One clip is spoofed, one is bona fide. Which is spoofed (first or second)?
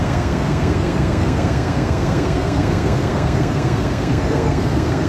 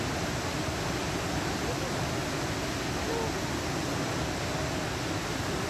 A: first